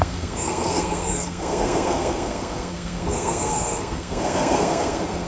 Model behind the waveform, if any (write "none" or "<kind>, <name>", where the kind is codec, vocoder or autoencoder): codec, SNAC